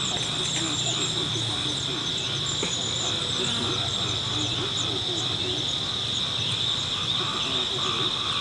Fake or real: real